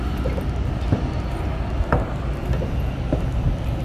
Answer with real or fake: real